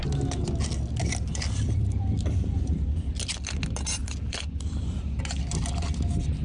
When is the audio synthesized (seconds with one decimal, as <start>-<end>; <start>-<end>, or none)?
1.0-3.1; 4.0-5.2